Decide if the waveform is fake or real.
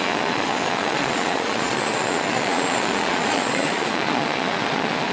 fake